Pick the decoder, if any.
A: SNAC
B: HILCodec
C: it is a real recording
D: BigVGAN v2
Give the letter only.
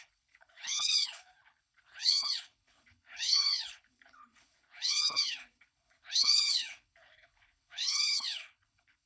B